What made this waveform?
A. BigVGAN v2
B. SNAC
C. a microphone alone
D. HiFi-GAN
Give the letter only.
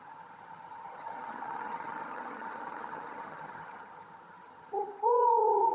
D